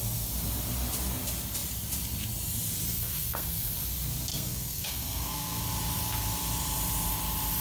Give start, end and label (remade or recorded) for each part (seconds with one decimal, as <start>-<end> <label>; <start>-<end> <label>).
0.0-2.9 recorded; 2.9-3.8 remade; 3.8-4.3 recorded; 4.3-5.6 remade; 5.6-7.6 recorded